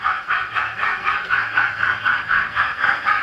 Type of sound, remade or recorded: remade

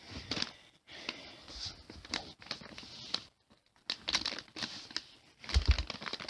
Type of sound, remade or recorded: recorded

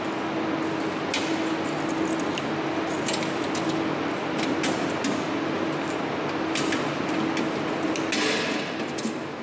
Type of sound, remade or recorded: recorded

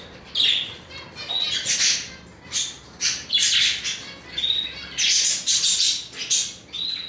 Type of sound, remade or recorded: recorded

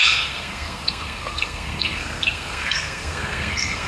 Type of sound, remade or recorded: remade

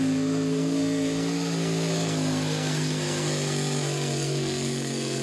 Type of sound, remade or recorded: remade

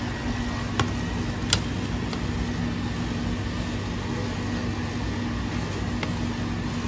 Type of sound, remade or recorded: recorded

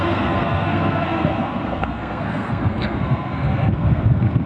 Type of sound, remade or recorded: remade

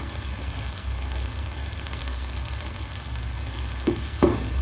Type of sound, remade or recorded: remade